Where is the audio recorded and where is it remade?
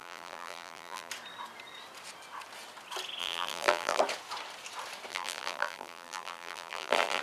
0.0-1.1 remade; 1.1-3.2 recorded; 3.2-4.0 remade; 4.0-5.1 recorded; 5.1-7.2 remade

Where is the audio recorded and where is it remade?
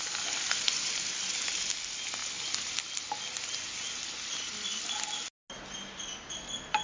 0.0-6.8 recorded